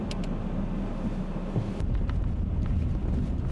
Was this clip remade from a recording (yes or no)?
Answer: no